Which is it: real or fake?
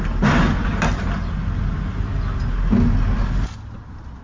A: real